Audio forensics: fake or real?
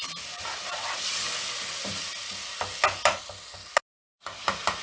real